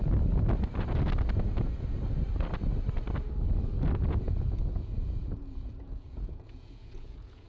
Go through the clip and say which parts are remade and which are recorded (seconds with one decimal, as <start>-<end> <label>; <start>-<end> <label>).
0.0-3.9 recorded; 3.9-7.5 remade